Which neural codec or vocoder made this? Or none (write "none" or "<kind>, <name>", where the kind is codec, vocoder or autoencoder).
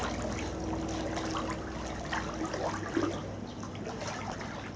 none